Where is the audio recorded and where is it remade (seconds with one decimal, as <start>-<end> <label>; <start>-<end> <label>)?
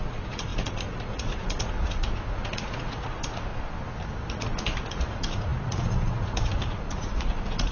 0.0-3.5 remade; 3.5-4.3 recorded; 4.3-7.7 remade